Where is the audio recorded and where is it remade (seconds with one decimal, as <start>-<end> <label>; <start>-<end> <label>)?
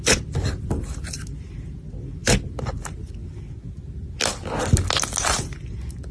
0.0-6.1 recorded